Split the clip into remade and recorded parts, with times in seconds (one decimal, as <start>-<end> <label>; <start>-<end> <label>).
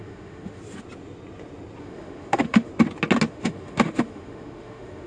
0.0-0.6 remade; 0.6-1.8 recorded; 1.8-2.7 remade; 2.7-3.3 recorded; 3.3-5.1 remade